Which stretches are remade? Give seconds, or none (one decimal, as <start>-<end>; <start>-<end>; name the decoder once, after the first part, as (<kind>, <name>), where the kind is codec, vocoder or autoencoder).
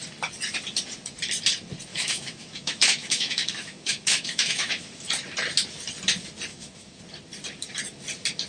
1.9-5.0 (autoencoder, DAC-VAE); 6.5-7.0